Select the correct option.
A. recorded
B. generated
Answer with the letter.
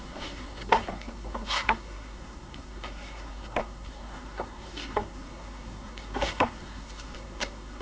B